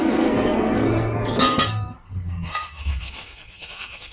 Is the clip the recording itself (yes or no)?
no